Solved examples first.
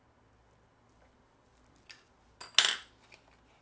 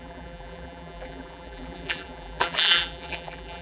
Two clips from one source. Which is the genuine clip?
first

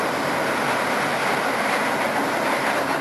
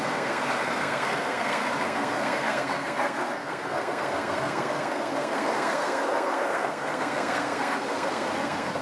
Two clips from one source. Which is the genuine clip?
first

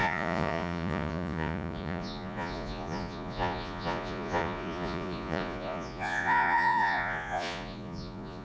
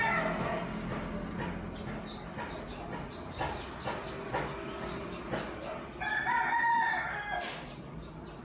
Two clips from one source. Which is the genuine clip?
second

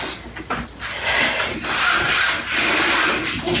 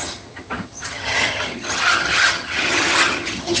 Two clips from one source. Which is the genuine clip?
first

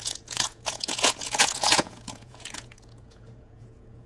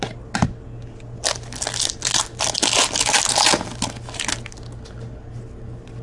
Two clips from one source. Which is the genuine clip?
second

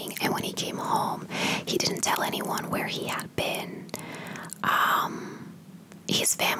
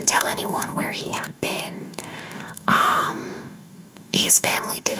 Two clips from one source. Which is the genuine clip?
first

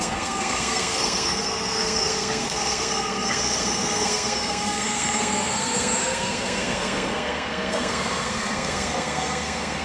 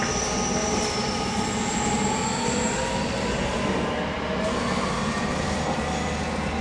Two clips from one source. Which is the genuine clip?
second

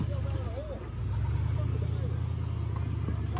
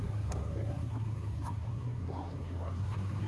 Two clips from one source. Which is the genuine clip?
first